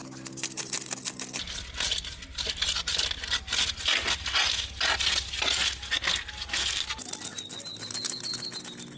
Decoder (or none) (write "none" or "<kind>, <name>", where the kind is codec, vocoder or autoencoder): none